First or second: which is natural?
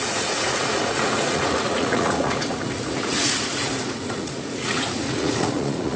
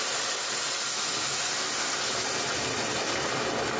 second